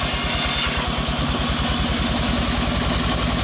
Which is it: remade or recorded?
recorded